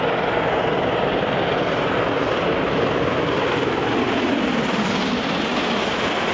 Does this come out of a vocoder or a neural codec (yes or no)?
no